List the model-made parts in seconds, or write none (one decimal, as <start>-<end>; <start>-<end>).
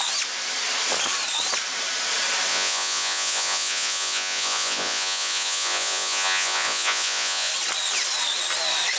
2.5-7.5